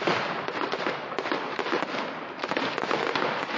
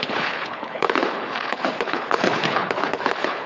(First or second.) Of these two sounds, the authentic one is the first